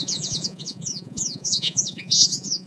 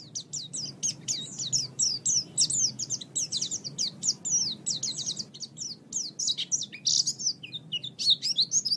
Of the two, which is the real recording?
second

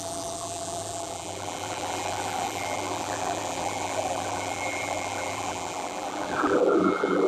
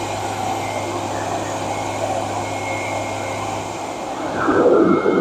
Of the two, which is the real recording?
second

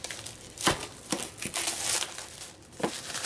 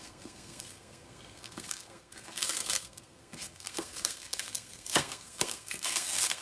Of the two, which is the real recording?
first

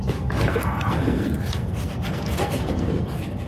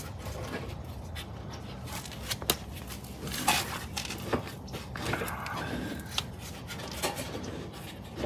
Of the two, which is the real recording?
second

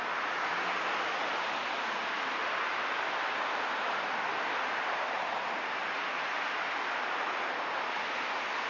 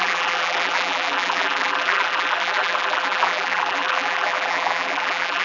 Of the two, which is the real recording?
first